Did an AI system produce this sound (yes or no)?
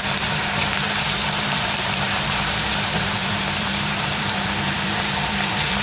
yes